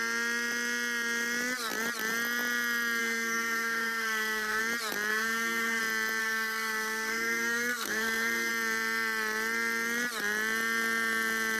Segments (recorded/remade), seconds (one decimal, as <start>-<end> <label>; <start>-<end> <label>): 0.0-3.0 recorded; 3.0-4.6 remade; 4.6-5.1 recorded; 5.1-5.8 remade; 5.8-6.2 recorded; 6.2-8.5 remade; 8.5-11.6 recorded